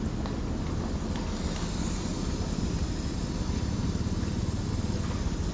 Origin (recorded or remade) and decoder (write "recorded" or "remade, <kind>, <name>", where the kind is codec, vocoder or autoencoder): recorded